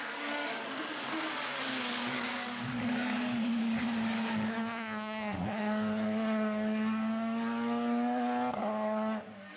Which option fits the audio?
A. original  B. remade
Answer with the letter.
B